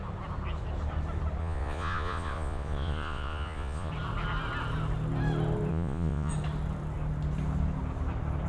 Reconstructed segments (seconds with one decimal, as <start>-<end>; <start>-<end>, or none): 1.4-3.9; 5.7-6.3